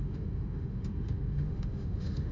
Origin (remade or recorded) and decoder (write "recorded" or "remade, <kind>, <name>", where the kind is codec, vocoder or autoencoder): remade, autoencoder, DAC-VAE